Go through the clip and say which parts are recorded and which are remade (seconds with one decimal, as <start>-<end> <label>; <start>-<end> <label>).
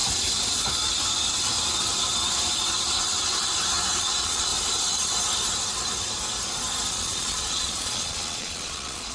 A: 0.0-4.0 recorded; 4.0-4.5 remade; 4.5-6.9 recorded; 6.9-9.1 remade